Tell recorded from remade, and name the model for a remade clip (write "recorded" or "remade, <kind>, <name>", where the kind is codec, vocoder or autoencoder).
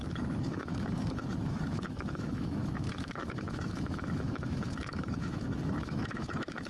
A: remade, autoencoder, DAC-VAE